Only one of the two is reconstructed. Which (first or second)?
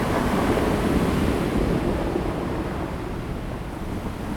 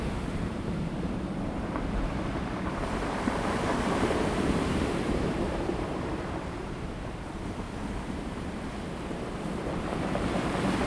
second